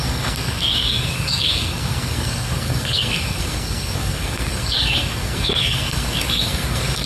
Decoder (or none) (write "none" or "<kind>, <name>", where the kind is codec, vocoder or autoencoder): codec, SNAC